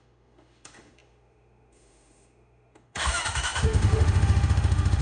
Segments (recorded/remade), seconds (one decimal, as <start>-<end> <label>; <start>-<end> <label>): 0.0-5.0 remade

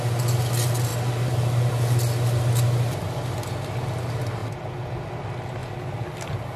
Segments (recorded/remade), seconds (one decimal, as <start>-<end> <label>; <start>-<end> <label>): 0.0-5.6 recorded; 5.6-6.6 remade